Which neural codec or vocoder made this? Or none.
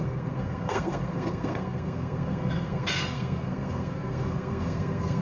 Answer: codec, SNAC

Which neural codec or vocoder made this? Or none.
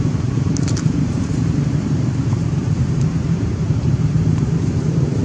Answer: vocoder, BigVGAN v2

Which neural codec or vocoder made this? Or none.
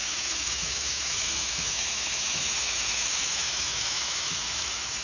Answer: autoencoder, DAC-VAE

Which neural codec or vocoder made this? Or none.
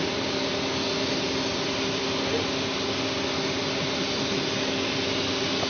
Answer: none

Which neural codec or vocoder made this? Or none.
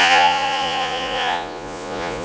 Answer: vocoder, Vocos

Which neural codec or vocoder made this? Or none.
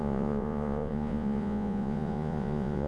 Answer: vocoder, Vocos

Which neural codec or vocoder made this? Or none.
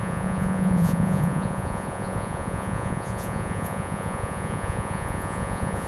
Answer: vocoder, Vocos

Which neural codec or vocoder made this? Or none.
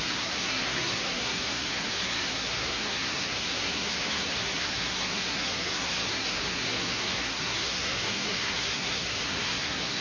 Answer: codec, SNAC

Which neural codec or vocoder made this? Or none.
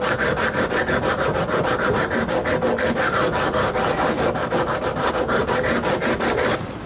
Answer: none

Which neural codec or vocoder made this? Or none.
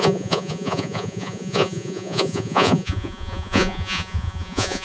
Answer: vocoder, Vocos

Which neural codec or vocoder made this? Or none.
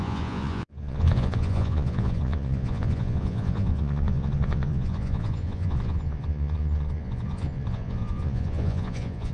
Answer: vocoder, Vocos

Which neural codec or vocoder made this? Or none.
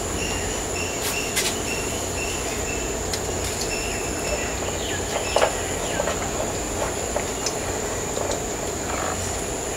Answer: none